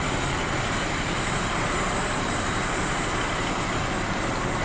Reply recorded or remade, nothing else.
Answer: recorded